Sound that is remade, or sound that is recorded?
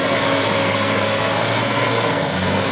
remade